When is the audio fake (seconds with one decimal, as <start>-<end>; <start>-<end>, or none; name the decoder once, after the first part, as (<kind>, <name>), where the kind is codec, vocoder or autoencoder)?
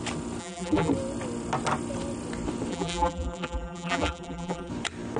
0.4-0.9 (vocoder, BigVGAN v2); 2.7-4.7